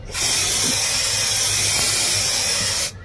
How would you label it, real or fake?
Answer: real